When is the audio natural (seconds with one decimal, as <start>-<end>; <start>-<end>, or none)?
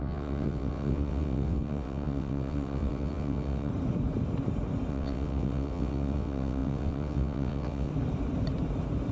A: 3.7-4.9; 7.9-9.1